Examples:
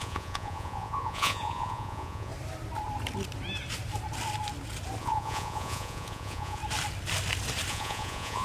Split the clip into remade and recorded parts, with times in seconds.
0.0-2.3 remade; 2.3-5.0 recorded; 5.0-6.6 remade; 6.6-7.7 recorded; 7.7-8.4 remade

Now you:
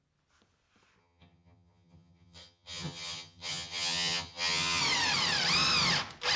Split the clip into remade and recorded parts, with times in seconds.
0.0-1.0 recorded; 1.0-4.8 remade; 4.8-6.4 recorded

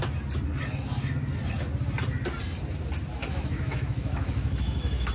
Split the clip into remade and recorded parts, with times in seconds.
0.0-3.2 recorded; 3.2-5.1 remade

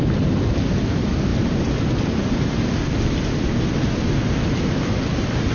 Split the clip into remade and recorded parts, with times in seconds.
0.0-5.5 recorded

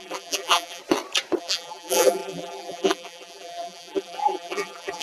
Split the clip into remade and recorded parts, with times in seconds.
0.0-0.8 remade; 0.8-1.4 recorded; 1.4-5.0 remade